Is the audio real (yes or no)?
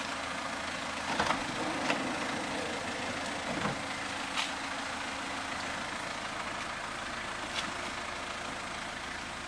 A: yes